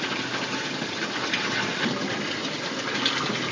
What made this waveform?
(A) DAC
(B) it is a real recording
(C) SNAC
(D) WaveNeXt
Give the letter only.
B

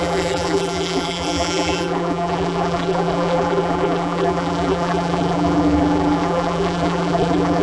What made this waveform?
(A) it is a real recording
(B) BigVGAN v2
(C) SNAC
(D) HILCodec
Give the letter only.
B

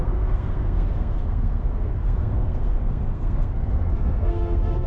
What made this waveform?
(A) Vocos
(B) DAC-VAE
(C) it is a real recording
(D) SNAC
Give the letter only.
D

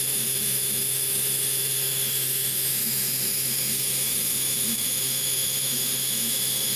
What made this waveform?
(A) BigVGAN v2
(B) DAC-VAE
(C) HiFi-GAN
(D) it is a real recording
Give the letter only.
B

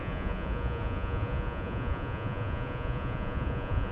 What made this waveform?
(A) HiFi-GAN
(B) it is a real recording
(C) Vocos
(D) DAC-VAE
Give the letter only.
C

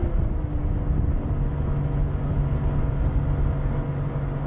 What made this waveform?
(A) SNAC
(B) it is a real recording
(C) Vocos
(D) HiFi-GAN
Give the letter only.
B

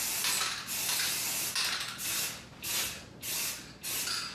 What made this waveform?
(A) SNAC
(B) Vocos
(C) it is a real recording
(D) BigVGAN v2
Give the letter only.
C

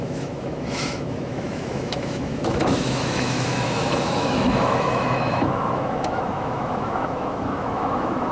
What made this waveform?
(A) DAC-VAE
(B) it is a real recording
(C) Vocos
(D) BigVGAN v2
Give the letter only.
A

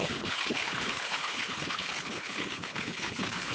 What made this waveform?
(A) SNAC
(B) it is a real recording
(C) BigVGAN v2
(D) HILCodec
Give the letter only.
D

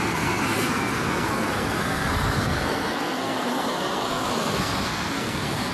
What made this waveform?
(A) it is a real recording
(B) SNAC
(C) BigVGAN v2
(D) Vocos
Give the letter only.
B